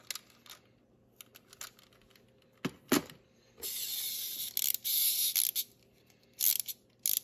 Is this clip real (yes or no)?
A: yes